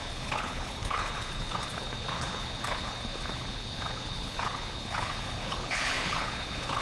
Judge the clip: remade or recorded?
remade